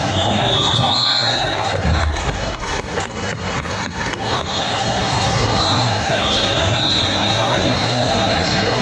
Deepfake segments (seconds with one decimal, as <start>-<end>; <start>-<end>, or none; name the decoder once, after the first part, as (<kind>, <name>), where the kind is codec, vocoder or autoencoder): 0.0-8.8 (codec, SNAC)